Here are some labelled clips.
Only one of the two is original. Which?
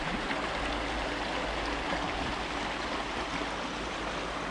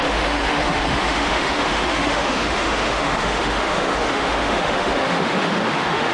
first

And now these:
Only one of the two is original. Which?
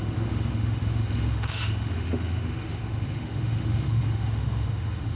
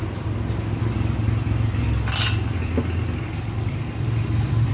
second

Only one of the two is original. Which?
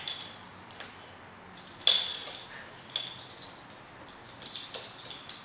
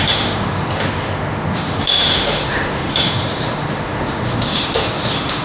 first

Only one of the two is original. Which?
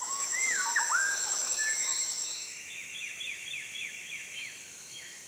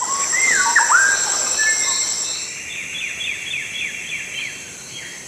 second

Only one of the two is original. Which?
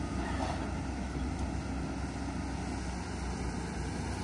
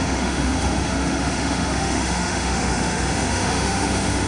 first